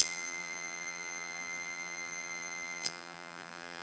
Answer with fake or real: fake